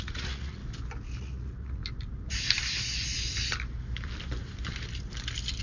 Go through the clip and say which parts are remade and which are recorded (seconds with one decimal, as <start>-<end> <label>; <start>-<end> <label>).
0.0-0.6 remade; 0.6-1.2 recorded; 1.2-1.8 remade; 1.8-5.6 recorded